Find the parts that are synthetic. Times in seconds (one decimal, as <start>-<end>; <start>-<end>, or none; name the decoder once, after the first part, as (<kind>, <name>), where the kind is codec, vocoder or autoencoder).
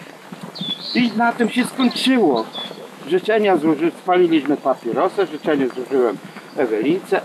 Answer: 0.7-1.4 (autoencoder, DAC-VAE); 2.0-4.5; 6.0-7.2